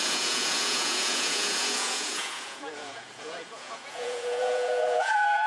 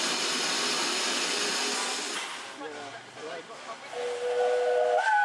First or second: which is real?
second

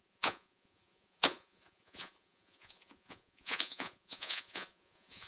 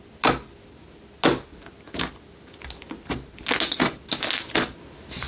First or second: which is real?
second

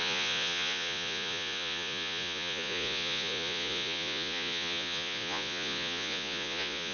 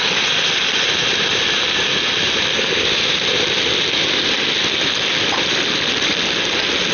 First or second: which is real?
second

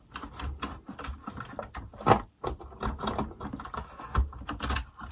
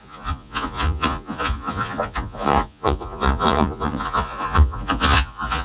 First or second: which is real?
first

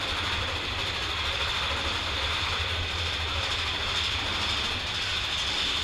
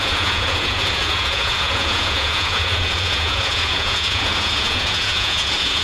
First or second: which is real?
first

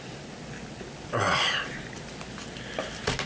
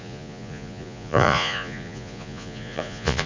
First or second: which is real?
first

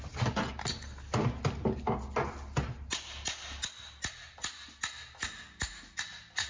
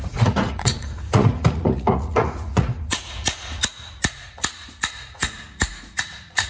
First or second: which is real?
first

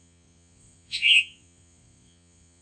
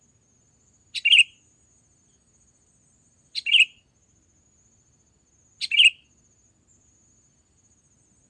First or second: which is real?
second